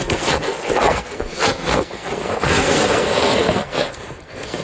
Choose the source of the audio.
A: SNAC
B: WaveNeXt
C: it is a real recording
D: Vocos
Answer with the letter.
A